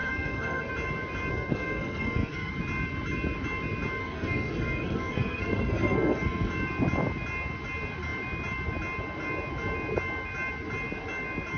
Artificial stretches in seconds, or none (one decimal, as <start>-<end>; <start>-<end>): 0.0-0.7; 1.3-2.5; 4.0-6.5